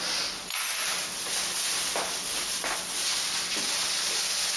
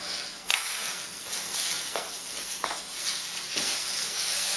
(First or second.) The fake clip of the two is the second